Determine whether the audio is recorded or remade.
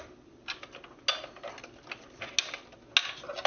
recorded